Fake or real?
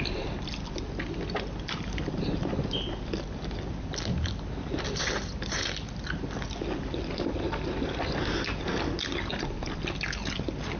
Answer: real